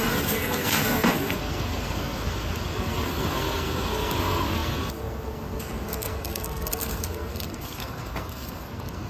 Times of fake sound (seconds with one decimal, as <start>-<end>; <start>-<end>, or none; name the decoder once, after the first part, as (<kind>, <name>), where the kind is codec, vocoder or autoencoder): 0.0-9.1 (codec, SNAC)